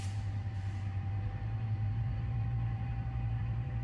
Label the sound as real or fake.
fake